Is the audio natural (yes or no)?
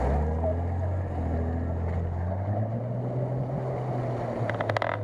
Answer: yes